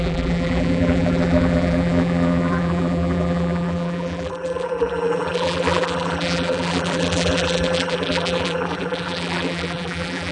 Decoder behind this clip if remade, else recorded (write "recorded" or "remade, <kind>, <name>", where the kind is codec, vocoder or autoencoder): remade, vocoder, BigVGAN v2